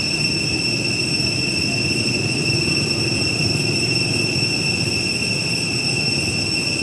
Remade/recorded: remade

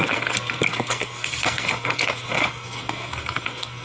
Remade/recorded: remade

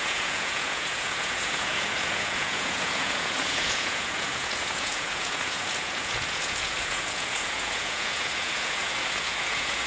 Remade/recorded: remade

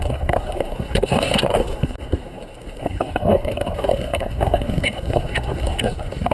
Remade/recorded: remade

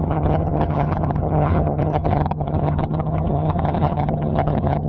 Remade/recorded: remade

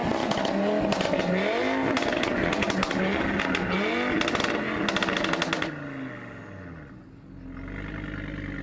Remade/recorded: recorded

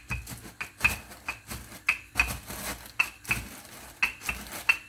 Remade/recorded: recorded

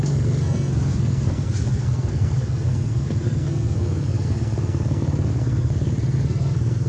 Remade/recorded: remade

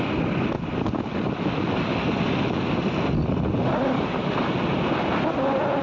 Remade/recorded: recorded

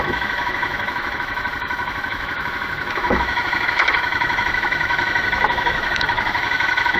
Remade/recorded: remade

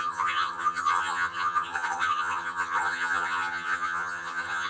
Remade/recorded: remade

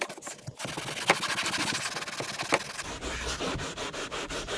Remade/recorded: recorded